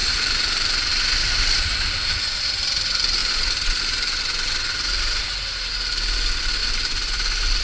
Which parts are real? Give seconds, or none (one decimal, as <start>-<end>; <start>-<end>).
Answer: 0.9-3.2; 5.2-6.6